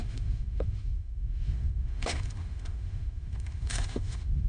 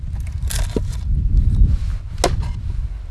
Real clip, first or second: second